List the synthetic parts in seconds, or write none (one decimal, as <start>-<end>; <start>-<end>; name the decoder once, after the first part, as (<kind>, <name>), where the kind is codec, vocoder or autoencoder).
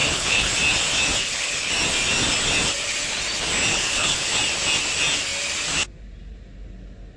0.0-0.5 (codec, HILCodec); 1.2-1.7; 3.7-4.4